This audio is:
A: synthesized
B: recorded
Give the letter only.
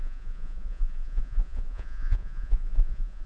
A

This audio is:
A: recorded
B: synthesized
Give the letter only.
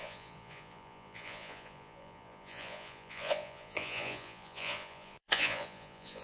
B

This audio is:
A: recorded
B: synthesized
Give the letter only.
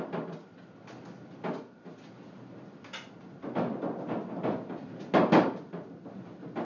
A